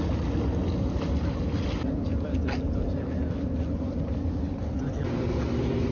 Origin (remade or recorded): recorded